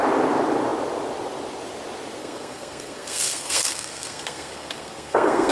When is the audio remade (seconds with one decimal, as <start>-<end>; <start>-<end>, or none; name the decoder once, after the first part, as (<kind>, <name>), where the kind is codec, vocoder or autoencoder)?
2.2-5.5 (codec, SNAC)